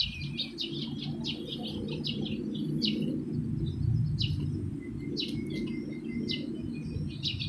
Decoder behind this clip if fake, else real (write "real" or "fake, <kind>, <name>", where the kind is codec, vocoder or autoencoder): real